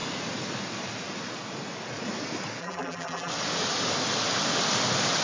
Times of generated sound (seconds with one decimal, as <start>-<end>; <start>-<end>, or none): 2.6-3.3